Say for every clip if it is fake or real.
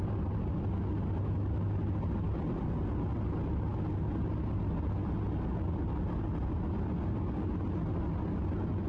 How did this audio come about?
real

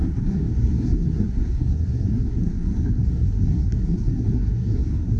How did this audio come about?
fake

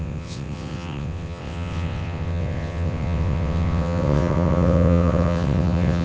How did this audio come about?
fake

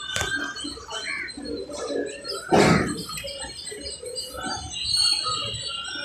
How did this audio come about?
real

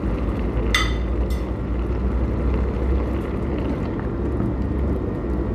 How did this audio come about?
real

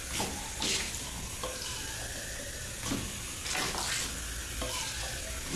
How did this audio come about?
real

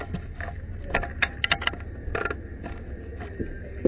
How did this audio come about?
real